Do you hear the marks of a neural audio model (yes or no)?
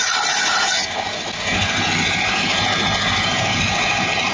no